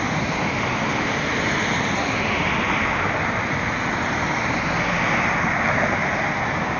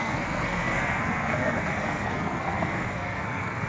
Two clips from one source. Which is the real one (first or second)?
first